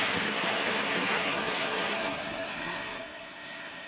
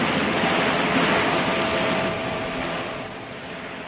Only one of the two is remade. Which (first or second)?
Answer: first